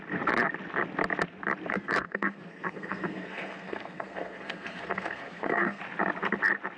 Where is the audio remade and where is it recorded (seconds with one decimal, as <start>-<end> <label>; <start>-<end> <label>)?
0.0-1.7 recorded; 1.7-5.8 remade; 5.8-6.8 recorded